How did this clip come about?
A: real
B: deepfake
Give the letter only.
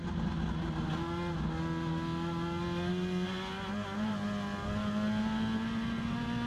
A